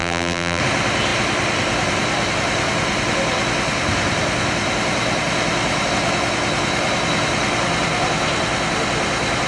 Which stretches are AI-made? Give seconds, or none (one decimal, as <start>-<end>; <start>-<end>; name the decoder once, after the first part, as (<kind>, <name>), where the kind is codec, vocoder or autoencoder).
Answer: 0.0-0.6 (vocoder, BigVGAN v2)